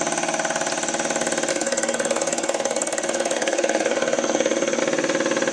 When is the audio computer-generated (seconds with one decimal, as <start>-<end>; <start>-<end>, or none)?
1.5-4.8